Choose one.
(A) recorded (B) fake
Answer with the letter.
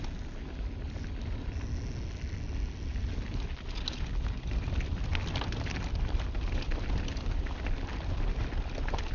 A